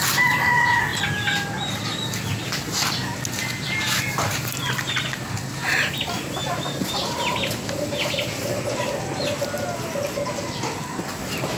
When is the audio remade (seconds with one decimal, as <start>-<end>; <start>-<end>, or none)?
none

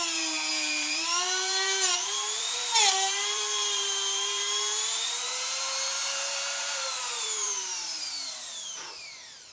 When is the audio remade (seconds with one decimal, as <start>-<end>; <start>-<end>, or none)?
0.0-9.5

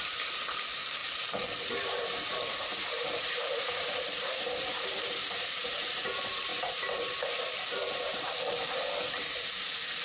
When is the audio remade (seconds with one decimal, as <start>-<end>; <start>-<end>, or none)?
0.0-10.0

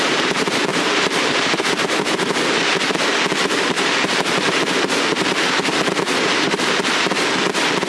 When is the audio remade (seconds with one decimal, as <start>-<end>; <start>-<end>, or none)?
0.7-2.8; 3.4-6.9

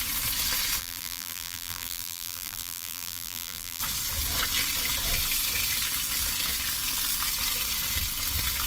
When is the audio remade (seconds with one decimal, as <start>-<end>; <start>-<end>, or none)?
0.8-3.8

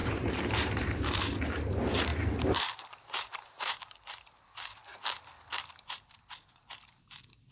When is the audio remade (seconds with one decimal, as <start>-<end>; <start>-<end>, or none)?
0.0-4.8; 5.8-7.5

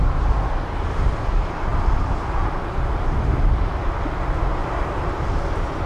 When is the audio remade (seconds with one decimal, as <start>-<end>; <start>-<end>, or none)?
4.6-5.2

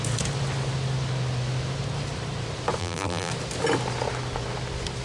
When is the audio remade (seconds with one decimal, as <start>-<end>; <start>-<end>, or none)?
2.8-3.3